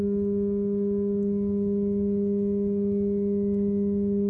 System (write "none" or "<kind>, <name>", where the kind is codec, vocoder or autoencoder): none